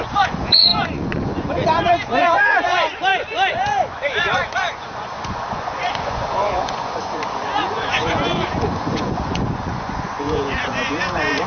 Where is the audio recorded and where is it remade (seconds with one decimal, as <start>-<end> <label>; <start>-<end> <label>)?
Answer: 0.0-11.5 remade